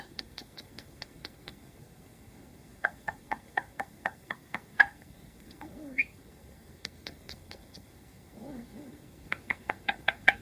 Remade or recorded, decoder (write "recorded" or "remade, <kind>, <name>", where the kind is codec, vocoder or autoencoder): remade, codec, SNAC